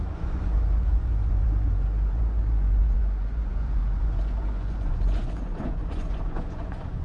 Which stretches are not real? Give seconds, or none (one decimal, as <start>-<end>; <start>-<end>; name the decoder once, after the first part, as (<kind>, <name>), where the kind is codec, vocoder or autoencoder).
0.0-7.0 (vocoder, Vocos)